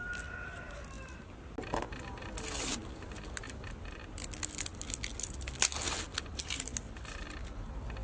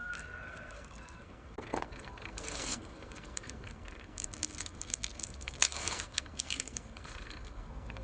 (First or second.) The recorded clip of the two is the first